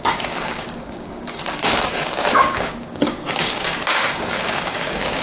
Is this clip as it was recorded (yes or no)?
no